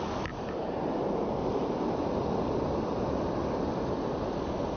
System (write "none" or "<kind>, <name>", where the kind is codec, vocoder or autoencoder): none